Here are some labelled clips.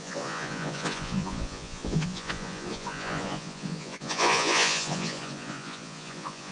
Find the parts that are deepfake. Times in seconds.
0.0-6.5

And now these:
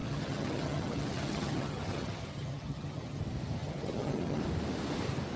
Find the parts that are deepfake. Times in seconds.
0.0-3.2; 3.6-4.4

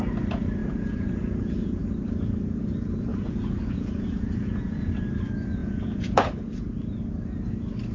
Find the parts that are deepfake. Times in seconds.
0.6-1.8; 3.1-4.9; 5.6-6.6